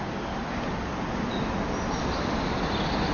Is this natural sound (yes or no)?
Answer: yes